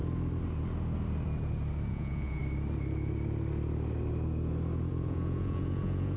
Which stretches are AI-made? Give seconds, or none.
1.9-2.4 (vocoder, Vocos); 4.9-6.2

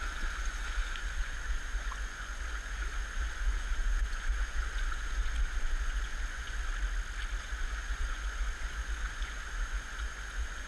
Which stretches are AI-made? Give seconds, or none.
0.0-6.7 (vocoder, Vocos); 7.4-10.7